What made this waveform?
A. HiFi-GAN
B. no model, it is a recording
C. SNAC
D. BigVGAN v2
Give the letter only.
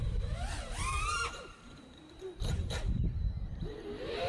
D